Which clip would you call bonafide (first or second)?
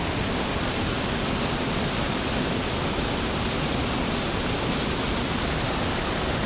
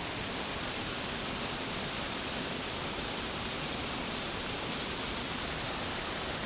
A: first